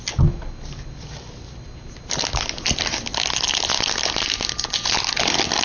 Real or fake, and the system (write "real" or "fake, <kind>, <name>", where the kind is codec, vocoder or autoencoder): real